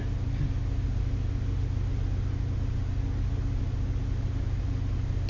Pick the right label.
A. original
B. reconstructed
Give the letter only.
A